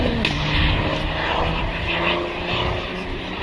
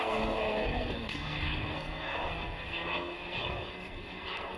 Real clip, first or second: first